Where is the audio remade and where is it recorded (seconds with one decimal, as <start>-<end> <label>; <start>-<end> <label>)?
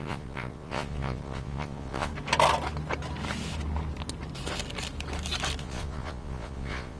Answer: 0.0-2.1 remade; 2.1-5.6 recorded; 5.6-7.0 remade